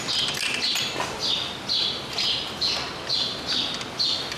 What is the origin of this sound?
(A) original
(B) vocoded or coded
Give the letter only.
A